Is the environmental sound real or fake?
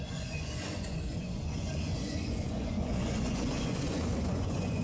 fake